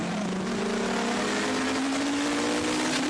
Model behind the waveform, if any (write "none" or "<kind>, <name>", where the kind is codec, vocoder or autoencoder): none